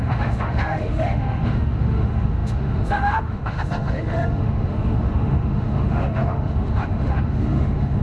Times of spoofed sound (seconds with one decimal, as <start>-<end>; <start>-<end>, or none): 0.0-8.0

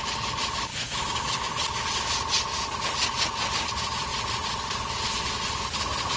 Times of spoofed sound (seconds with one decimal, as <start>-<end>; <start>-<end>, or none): 0.7-1.4

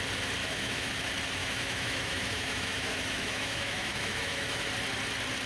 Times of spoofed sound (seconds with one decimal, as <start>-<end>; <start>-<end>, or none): 0.4-0.9; 1.4-4.7

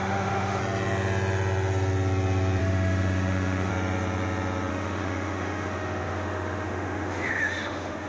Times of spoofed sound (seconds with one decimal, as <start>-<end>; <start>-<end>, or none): 0.0-0.6; 2.6-3.7; 4.7-8.1